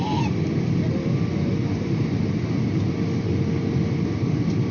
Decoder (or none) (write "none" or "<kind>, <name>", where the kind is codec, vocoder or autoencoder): none